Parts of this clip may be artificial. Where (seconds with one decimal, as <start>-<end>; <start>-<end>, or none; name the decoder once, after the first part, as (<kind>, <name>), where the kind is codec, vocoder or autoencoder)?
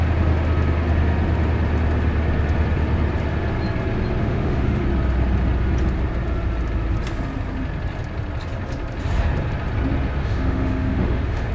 4.2-4.8 (autoencoder, DAC-VAE); 10.2-11.5